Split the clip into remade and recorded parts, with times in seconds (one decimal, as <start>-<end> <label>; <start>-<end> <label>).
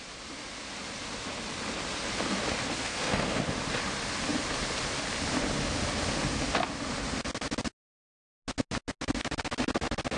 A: 0.0-2.8 recorded; 2.8-3.4 remade; 3.4-10.2 recorded